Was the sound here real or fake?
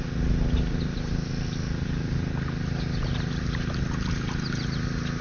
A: real